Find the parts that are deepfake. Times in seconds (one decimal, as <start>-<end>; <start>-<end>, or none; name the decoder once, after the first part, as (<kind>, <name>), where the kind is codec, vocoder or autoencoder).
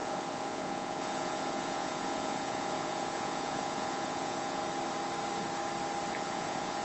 0.0-4.6 (vocoder, Vocos); 6.1-6.8